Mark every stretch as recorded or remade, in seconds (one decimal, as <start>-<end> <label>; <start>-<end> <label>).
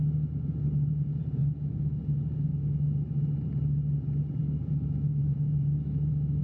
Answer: 0.0-1.4 recorded; 1.4-2.0 remade; 2.0-2.5 recorded; 2.5-3.1 remade; 3.1-4.4 recorded; 4.4-6.4 remade